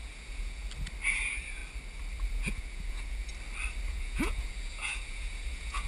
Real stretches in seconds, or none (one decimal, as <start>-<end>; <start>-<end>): 0.6-1.1; 1.6-2.3; 3.3-3.9